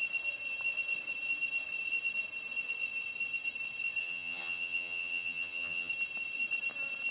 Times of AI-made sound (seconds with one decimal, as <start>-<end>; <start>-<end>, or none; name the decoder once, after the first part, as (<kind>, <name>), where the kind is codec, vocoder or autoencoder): 4.0-5.9 (vocoder, HiFi-GAN)